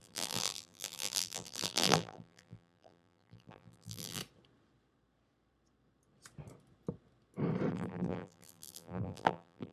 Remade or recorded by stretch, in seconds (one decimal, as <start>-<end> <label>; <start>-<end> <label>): 0.0-4.2 remade; 4.2-7.7 recorded; 7.7-9.7 remade